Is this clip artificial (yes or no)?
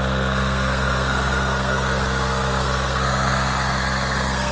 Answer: yes